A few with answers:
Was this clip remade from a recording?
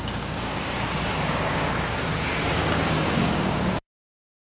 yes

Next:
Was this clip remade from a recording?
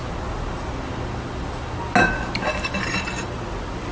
no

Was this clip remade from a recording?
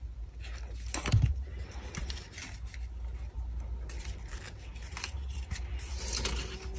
no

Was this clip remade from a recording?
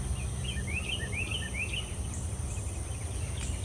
no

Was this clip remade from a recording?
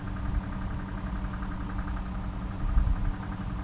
no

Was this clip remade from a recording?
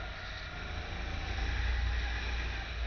no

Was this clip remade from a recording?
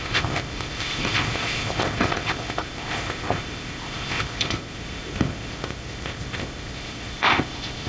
yes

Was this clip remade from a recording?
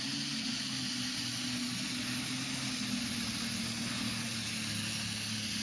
no